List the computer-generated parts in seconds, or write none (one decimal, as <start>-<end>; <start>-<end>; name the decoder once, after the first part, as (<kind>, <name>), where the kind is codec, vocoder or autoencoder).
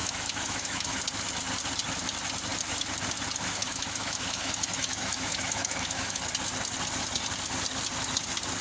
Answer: 0.0-1.0 (autoencoder, DAC-VAE); 3.6-6.2